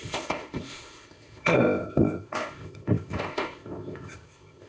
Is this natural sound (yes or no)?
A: no